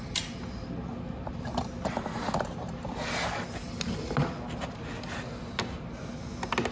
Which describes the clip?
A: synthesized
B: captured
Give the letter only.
B